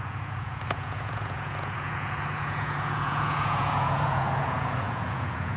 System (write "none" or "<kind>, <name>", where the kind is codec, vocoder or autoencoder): vocoder, Vocos